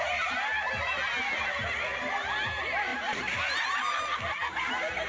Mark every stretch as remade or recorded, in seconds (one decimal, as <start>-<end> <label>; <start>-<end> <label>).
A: 0.0-5.1 recorded